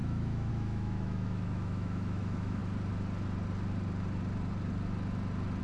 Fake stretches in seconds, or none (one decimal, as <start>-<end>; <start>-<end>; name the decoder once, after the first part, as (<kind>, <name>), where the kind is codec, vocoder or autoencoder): 0.0-2.6 (autoencoder, DAC-VAE)